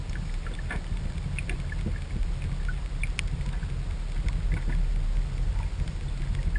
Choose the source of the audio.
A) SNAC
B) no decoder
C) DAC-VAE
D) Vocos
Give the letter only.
B